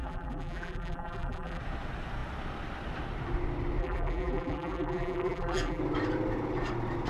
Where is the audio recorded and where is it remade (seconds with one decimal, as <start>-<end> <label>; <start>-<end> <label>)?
0.0-1.6 remade; 1.6-3.8 recorded; 3.8-5.8 remade; 5.8-7.1 recorded